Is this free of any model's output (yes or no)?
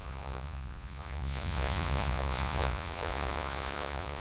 no